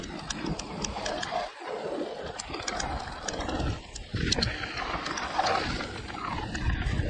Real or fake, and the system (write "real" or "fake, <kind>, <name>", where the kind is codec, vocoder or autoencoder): real